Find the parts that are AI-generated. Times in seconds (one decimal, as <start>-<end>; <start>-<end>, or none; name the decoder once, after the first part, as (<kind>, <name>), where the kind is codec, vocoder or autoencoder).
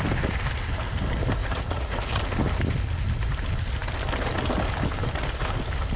1.4-2.1 (vocoder, Vocos)